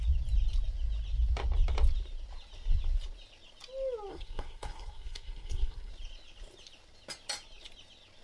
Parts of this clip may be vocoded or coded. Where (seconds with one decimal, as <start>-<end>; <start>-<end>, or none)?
4.1-5.9